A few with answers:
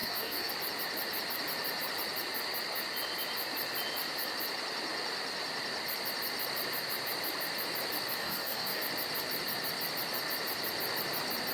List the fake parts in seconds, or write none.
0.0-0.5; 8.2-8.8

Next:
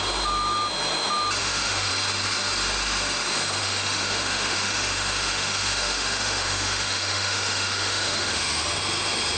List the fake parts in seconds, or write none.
1.4-1.9; 3.6-8.6

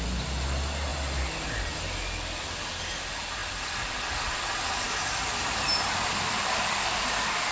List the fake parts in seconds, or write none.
none

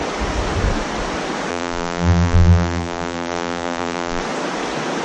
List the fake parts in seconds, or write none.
1.5-4.2

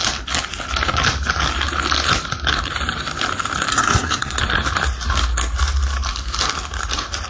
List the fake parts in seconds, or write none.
3.7-4.4

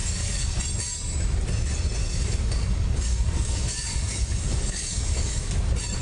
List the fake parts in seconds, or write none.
0.0-0.6; 2.0-5.6

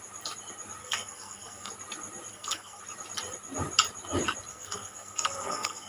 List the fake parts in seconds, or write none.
0.8-1.7; 2.3-2.8; 4.5-5.9